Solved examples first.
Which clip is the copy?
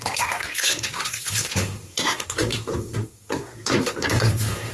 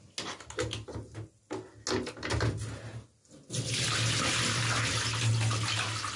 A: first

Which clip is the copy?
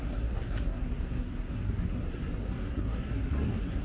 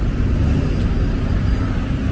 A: first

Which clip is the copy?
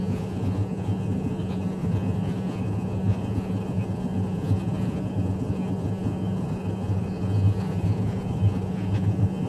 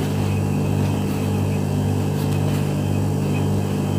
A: first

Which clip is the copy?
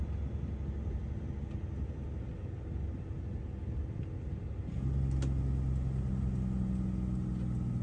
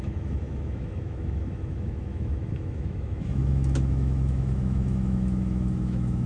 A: second